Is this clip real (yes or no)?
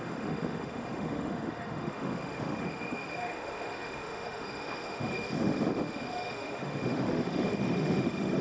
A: no